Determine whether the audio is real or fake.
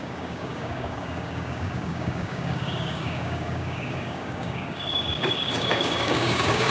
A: fake